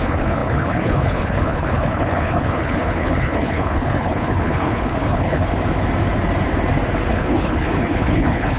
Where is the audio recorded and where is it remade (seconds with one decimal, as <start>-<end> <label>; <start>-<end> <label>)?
0.0-5.5 remade; 5.5-7.1 recorded; 7.1-8.6 remade